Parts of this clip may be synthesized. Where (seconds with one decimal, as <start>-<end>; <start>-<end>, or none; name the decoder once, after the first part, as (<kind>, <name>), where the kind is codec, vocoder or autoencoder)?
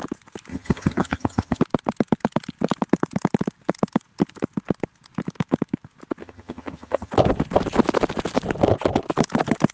0.5-1.6 (vocoder, HiFi-GAN); 6.2-7.1